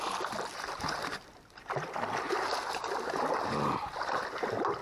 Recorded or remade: recorded